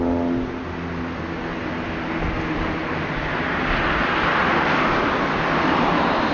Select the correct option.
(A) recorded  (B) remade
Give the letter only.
A